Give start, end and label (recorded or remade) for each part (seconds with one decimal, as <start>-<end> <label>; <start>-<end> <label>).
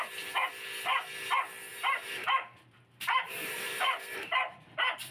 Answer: 0.0-1.7 recorded; 1.7-5.1 remade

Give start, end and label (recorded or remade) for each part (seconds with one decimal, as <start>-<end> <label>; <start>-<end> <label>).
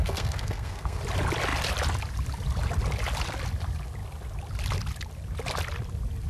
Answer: 0.0-1.0 remade; 1.0-6.3 recorded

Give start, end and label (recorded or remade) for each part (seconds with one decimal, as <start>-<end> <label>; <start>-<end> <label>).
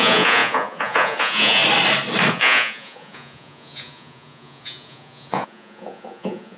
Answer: 0.0-1.6 remade; 1.6-2.3 recorded; 2.3-6.6 remade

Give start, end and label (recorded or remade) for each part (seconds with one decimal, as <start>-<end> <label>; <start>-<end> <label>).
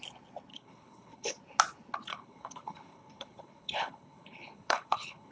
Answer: 0.0-0.5 recorded; 0.5-1.4 remade; 1.4-2.1 recorded; 2.1-5.3 remade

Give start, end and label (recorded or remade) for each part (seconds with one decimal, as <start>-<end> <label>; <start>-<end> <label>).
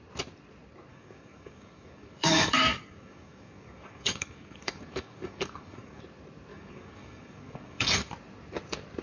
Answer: 0.0-0.9 recorded; 0.9-6.0 remade; 6.0-6.5 recorded; 6.5-8.1 remade; 8.1-9.0 recorded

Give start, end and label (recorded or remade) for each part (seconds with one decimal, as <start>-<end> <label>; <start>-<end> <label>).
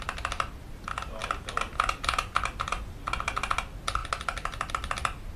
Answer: 0.0-5.4 recorded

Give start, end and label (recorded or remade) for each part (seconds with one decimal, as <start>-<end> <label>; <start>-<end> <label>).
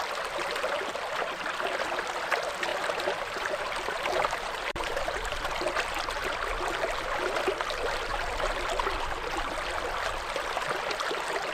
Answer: 0.0-2.7 recorded; 2.7-5.7 remade; 5.7-11.5 recorded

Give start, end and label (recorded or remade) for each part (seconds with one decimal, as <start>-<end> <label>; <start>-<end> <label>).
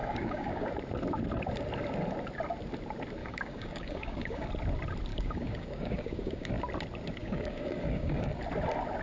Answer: 0.0-0.7 remade; 0.7-3.2 recorded; 3.2-4.5 remade; 4.5-5.1 recorded; 5.1-6.5 remade; 6.5-7.2 recorded; 7.2-8.4 remade; 8.4-9.0 recorded